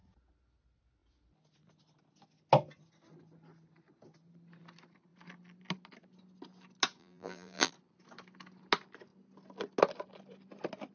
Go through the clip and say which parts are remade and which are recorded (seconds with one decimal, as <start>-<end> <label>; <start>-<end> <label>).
0.0-7.0 recorded; 7.0-7.7 remade; 7.7-10.9 recorded